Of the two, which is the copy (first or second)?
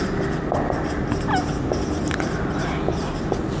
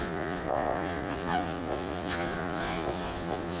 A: second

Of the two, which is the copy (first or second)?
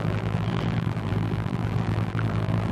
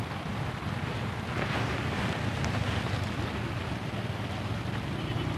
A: first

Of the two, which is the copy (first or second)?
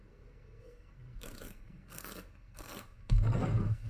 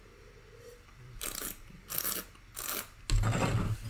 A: first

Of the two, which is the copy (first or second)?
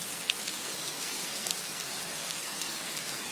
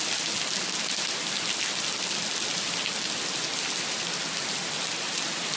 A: first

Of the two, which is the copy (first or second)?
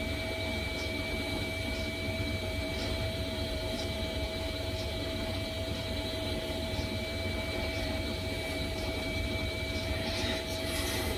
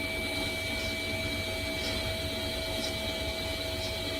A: first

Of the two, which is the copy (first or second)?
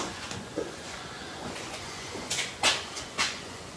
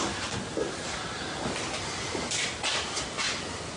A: first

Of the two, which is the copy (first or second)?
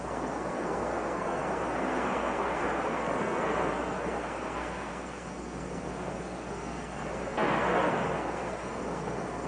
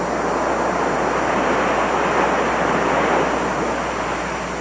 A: first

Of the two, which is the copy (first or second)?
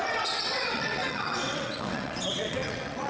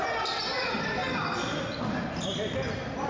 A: first